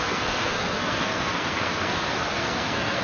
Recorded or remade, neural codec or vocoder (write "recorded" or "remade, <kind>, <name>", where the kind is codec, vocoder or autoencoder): remade, codec, SNAC